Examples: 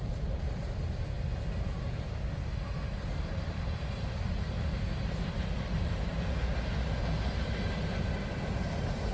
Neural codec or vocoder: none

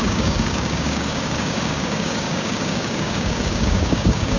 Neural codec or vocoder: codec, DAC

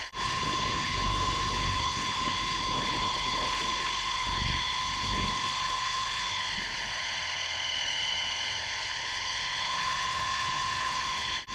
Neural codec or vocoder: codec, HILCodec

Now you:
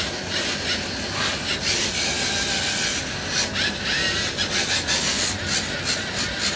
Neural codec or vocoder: none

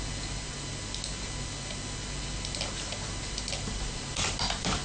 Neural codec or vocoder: none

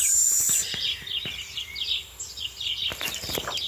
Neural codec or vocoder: none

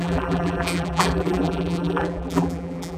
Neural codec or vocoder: vocoder, BigVGAN v2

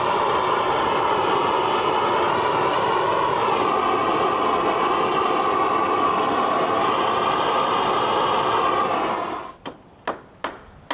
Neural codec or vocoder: none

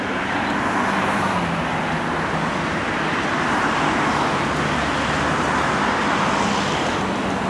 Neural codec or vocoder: none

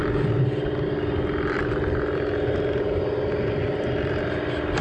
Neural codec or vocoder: none